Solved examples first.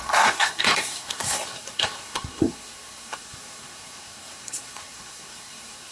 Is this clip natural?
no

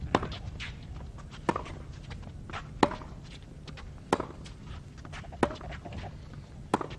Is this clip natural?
yes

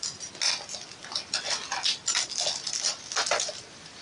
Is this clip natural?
yes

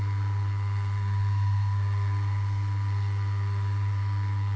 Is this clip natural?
no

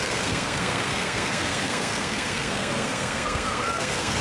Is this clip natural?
no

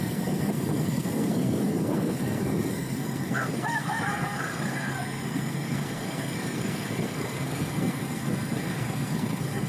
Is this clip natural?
no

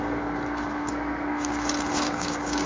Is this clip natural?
no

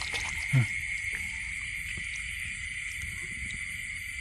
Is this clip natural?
yes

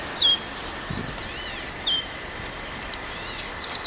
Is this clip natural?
yes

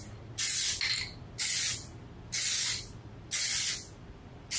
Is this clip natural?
yes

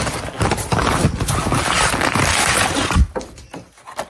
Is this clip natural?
yes